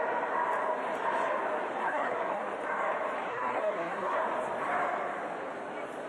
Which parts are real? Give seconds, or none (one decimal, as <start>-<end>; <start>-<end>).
0.0-1.8; 2.4-3.3; 4.2-6.1